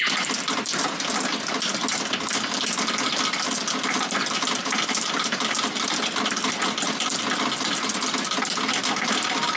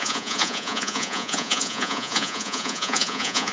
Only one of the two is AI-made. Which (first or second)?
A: second